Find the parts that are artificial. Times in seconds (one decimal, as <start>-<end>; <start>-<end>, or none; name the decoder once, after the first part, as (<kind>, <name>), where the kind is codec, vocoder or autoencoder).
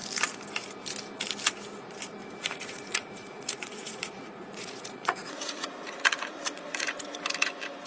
2.2-6.9 (vocoder, Vocos)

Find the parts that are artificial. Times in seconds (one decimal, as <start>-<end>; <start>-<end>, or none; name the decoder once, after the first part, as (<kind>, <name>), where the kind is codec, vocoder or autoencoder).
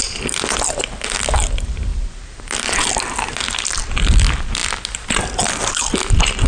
none